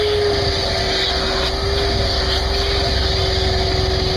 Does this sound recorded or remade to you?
recorded